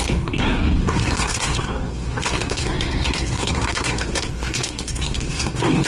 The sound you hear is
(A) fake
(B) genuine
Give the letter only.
A